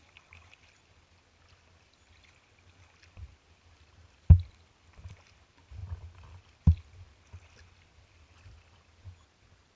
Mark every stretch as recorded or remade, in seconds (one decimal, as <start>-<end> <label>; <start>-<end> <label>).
0.0-9.8 recorded